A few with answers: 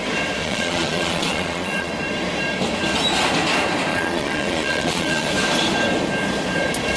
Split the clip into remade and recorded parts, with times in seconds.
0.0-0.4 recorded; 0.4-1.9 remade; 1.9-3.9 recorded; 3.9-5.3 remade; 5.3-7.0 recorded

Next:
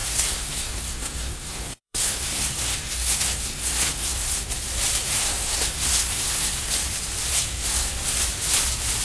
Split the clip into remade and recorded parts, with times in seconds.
0.0-4.5 remade; 4.5-5.0 recorded; 5.0-6.7 remade; 6.7-7.3 recorded; 7.3-7.9 remade; 7.9-9.0 recorded

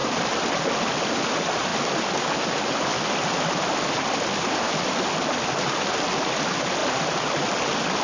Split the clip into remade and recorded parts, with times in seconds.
0.0-8.0 recorded